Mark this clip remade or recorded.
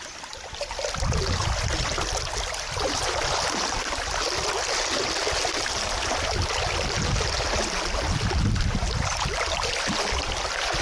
recorded